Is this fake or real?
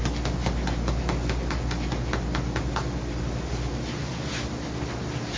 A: real